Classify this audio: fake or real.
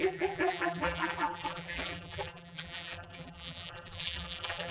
fake